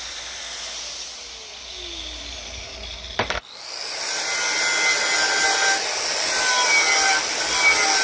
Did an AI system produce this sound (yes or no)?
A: no